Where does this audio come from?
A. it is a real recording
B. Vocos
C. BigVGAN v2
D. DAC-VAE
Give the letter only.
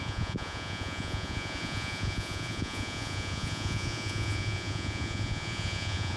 B